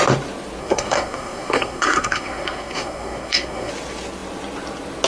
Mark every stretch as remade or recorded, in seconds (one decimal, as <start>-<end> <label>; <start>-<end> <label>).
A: 0.0-0.6 recorded; 0.6-3.7 remade; 3.7-5.1 recorded